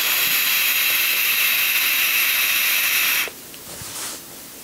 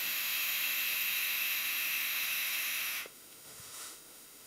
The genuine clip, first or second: first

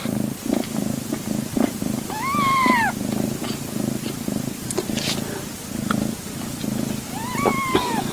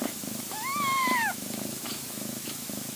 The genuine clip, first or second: first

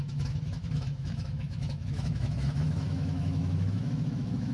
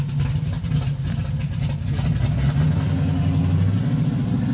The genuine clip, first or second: second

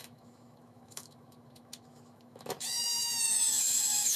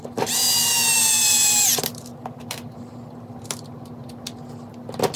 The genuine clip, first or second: second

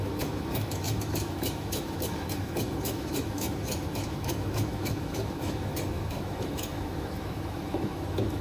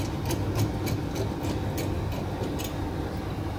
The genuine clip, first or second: second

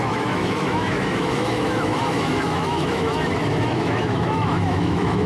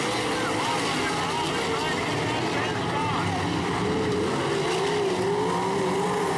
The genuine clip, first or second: second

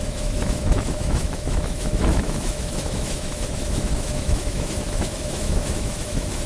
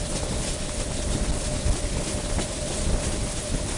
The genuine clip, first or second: second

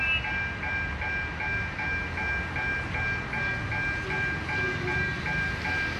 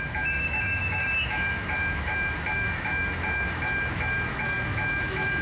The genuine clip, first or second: first